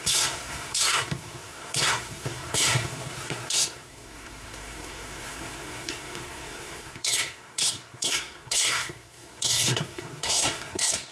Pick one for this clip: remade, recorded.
remade